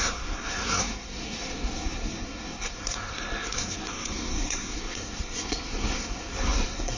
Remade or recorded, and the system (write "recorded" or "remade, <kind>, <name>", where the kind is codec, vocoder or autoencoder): remade, codec, SNAC